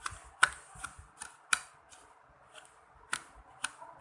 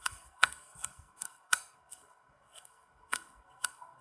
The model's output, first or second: second